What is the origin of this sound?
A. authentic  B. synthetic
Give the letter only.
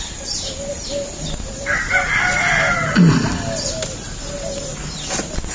A